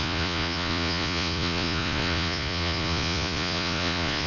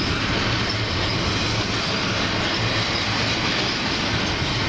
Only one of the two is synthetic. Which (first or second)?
first